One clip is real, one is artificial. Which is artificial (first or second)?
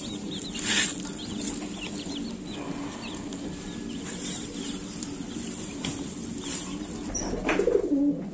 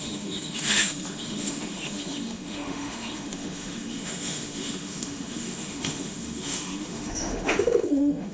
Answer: second